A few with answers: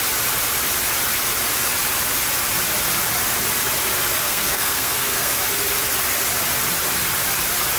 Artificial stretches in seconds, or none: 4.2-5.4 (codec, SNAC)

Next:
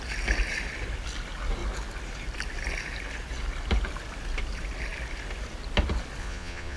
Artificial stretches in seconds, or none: 6.2-6.8 (vocoder, Vocos)

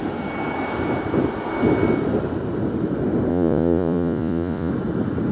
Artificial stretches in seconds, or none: 3.3-4.7 (vocoder, Vocos)

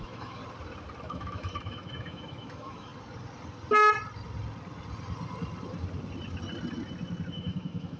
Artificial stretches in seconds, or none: 0.0-0.4 (autoencoder, DAC-VAE); 1.0-2.9; 7.3-8.0

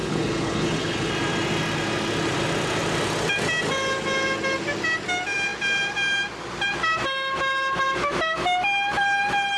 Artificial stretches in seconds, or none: 0.0-1.1 (codec, HILCodec)

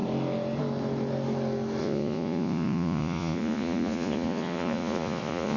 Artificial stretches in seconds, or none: 1.8-5.6 (vocoder, Vocos)